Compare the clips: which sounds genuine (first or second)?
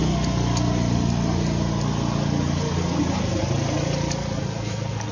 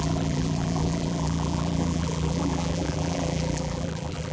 first